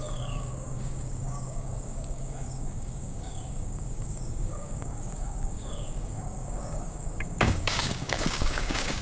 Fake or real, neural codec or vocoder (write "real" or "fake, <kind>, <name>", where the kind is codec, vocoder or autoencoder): fake, codec, DAC